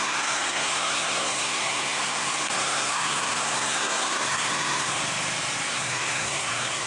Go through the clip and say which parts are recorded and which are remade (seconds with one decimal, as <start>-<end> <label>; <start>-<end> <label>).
0.0-5.0 remade; 5.0-5.7 recorded; 5.7-6.9 remade